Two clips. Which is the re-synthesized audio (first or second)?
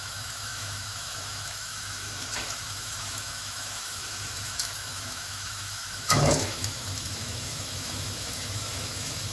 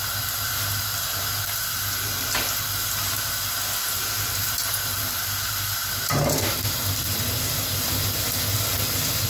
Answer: first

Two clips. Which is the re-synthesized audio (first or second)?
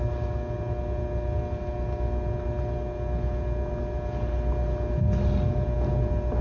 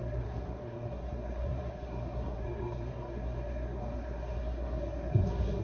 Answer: second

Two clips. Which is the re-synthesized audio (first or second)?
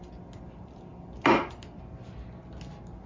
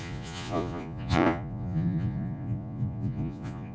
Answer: second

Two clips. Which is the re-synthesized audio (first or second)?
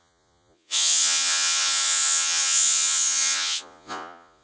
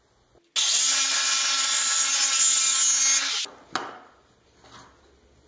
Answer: first